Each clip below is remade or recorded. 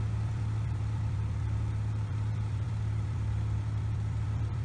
remade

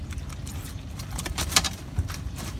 remade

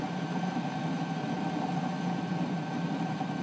recorded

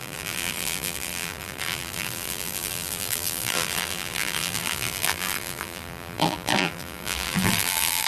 remade